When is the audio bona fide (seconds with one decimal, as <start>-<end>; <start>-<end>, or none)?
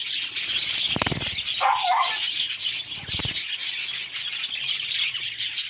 0.0-5.7